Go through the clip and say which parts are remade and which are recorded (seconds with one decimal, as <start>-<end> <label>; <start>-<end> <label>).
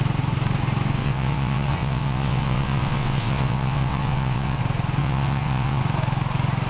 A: 0.0-1.0 recorded; 1.0-4.6 remade; 4.6-5.0 recorded; 5.0-5.8 remade; 5.8-6.7 recorded